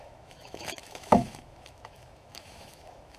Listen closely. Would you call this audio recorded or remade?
remade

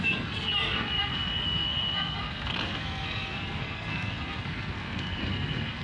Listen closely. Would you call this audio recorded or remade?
remade